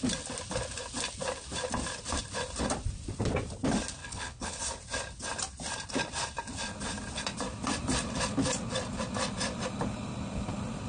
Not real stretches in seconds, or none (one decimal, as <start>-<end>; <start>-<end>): 4.0-4.6